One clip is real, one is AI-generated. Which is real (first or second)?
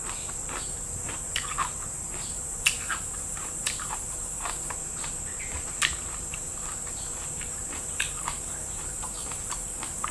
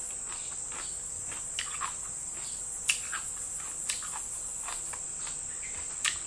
second